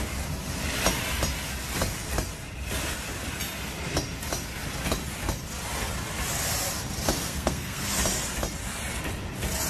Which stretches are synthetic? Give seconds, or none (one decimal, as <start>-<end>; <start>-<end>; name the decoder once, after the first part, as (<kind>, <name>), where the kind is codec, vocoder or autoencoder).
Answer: 7.2-7.8 (codec, SNAC)